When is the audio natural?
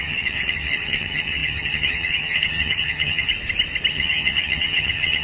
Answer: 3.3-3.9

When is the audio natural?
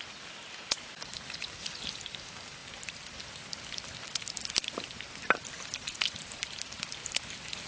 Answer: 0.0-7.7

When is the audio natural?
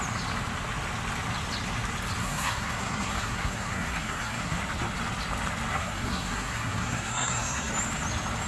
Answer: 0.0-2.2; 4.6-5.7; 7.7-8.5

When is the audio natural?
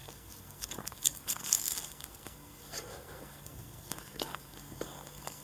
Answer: none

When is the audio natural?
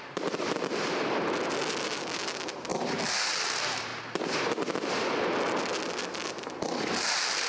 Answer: 3.9-5.4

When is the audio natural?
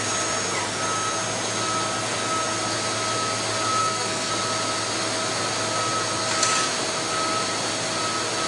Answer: 0.0-3.8; 4.3-8.5